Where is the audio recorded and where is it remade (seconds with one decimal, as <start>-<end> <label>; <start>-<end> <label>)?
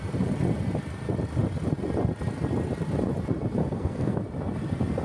0.0-3.6 recorded; 3.6-4.2 remade; 4.2-5.0 recorded